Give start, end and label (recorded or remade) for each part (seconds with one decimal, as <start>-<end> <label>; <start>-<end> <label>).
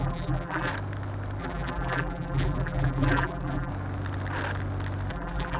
0.0-0.7 remade; 0.7-1.4 recorded; 1.4-3.7 remade; 3.7-5.1 recorded; 5.1-5.6 remade